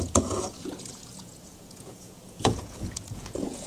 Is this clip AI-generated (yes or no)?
yes